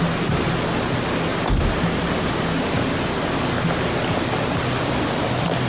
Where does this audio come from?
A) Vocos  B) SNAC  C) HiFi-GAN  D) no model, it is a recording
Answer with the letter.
D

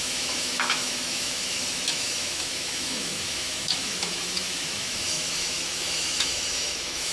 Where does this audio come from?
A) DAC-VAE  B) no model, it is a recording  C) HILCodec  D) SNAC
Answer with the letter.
A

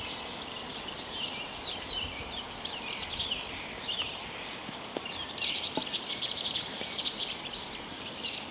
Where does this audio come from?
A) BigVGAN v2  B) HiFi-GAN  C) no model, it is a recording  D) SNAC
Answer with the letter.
A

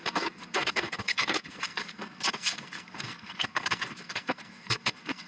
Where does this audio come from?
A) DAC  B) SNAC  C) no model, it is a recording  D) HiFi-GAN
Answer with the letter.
B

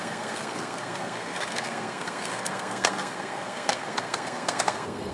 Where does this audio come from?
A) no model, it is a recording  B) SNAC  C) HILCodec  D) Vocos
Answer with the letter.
B